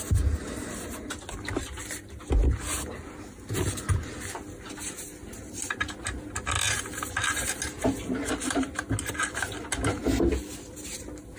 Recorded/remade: recorded